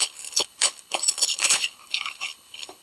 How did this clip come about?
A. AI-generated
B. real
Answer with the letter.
A